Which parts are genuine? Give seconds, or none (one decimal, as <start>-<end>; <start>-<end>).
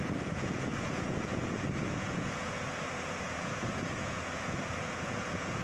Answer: none